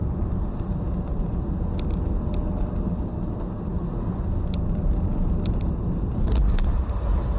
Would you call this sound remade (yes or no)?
no